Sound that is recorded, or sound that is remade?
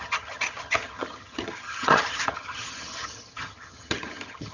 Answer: remade